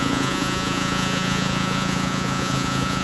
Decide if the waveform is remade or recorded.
remade